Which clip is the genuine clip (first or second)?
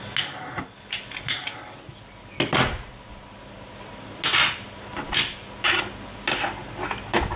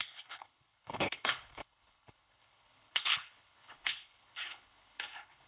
first